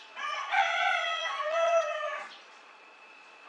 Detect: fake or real fake